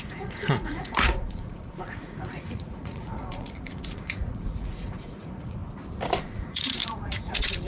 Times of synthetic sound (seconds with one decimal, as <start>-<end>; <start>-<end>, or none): 0.0-5.6; 6.2-7.7